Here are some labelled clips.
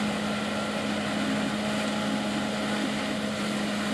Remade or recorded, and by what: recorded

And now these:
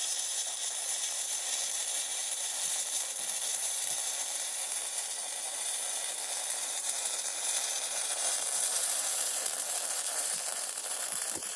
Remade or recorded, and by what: remade, vocoder, BigVGAN v2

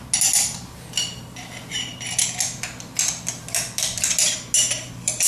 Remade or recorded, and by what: recorded